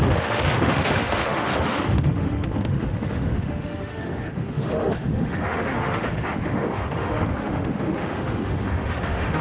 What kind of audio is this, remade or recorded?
remade